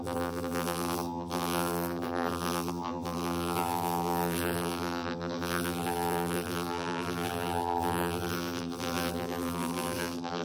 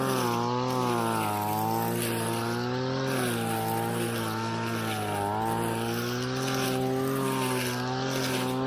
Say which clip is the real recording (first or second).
second